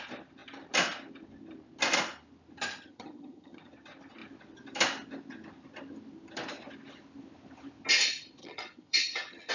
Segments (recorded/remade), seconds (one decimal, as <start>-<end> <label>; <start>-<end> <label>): 0.0-2.7 recorded; 2.7-3.7 remade; 3.7-8.4 recorded; 8.4-9.5 remade